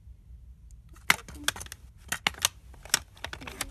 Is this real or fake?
real